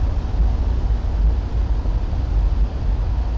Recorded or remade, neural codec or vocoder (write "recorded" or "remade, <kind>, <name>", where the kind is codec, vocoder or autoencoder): recorded